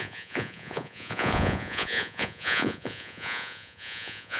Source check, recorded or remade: remade